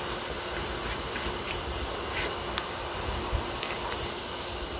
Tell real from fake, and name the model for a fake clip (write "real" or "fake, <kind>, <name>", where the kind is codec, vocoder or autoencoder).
real